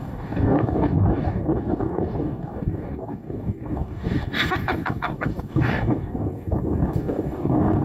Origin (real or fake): fake